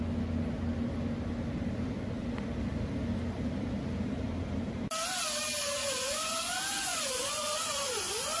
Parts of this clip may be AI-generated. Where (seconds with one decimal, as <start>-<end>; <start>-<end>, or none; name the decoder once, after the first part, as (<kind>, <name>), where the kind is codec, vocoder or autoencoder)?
5.8-8.4 (vocoder, Vocos)